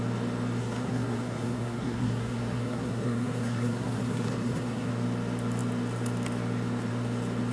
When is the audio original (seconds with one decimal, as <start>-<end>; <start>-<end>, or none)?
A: 0.0-0.6; 4.9-7.5